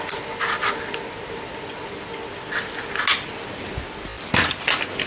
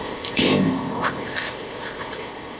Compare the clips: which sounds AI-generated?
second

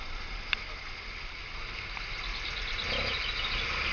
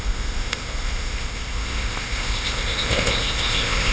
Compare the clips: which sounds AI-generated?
second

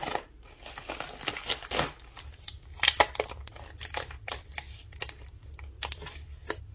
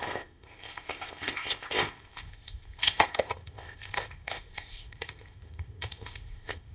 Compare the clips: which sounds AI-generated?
second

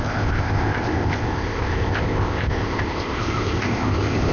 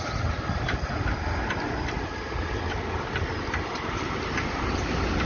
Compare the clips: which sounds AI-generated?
first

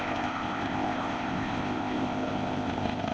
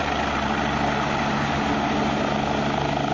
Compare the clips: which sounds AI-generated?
first